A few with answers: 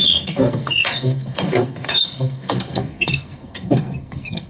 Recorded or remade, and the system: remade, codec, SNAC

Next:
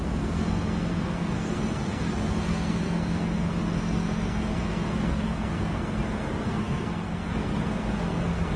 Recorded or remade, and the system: remade, codec, SNAC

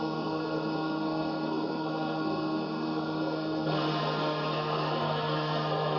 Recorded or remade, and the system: remade, codec, SNAC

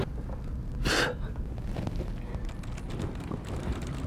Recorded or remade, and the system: recorded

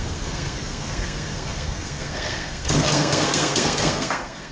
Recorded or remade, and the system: remade, codec, SNAC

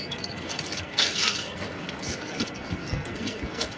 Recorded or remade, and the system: remade, codec, SNAC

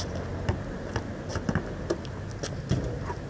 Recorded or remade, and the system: recorded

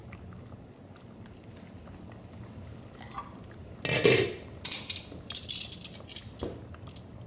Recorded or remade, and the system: recorded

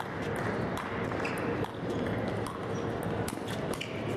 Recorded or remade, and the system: recorded